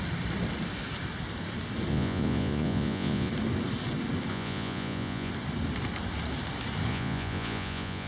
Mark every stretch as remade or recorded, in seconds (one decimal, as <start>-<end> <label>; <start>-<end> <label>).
0.0-1.9 recorded; 1.9-3.3 remade; 3.3-4.3 recorded; 4.3-5.3 remade; 5.3-6.9 recorded; 6.9-8.1 remade